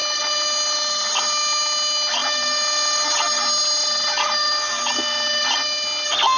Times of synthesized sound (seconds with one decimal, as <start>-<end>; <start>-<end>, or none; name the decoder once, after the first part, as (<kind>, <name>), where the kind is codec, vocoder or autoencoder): none